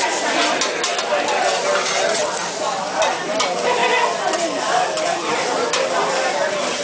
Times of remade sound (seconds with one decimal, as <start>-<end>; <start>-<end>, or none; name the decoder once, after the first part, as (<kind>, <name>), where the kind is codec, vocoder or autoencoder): none